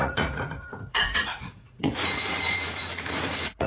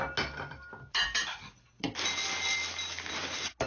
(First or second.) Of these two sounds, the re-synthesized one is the first